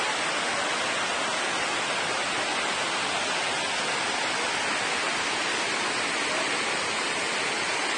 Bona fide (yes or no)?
yes